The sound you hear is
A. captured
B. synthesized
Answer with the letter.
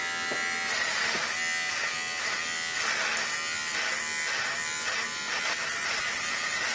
A